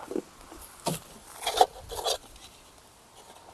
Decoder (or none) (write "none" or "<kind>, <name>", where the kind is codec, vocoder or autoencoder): none